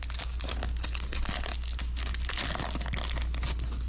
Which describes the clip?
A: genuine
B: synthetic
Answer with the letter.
A